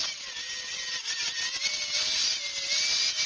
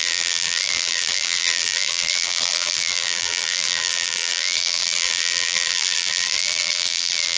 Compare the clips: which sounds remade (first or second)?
second